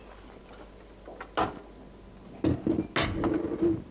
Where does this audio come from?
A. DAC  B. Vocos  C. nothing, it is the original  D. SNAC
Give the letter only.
C